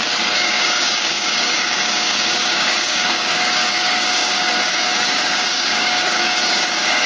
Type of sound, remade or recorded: remade